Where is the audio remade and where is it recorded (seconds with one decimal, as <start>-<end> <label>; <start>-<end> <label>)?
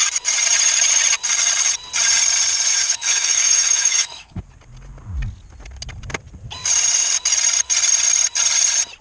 0.0-2.7 recorded; 2.7-4.4 remade; 4.4-9.0 recorded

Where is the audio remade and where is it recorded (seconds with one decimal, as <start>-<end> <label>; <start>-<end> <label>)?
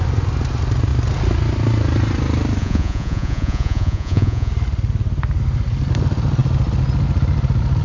0.0-2.6 recorded; 2.6-4.5 remade; 4.5-7.8 recorded